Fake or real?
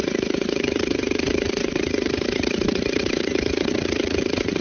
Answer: fake